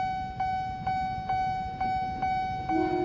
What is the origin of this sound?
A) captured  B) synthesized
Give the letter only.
A